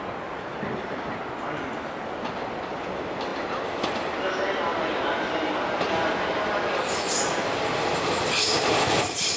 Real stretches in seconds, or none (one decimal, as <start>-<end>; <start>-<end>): 0.0-9.4